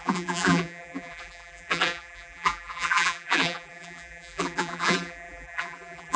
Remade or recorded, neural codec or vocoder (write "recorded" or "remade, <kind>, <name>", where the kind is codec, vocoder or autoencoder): remade, vocoder, BigVGAN v2